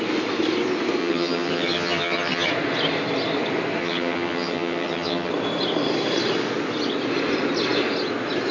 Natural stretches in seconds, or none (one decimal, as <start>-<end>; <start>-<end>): 0.0-1.0; 2.5-3.8; 5.3-8.5